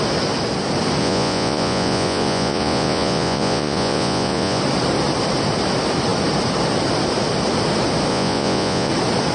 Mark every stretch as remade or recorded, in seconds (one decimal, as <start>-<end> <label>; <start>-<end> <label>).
0.0-1.0 recorded; 1.0-4.6 remade; 4.6-8.1 recorded; 8.1-8.9 remade; 8.9-9.3 recorded